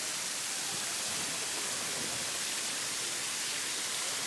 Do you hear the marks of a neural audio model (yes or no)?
no